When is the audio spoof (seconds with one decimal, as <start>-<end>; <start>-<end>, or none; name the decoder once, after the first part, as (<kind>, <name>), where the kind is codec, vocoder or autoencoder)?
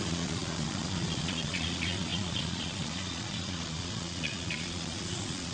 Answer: 0.0-5.5 (vocoder, Vocos)